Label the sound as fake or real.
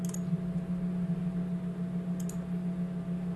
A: real